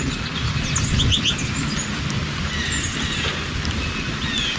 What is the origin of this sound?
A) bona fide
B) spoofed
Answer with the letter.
A